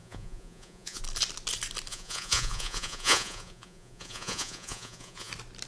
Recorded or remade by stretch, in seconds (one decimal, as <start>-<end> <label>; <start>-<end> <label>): 0.0-1.0 remade; 1.0-1.9 recorded; 1.9-5.3 remade; 5.3-5.7 recorded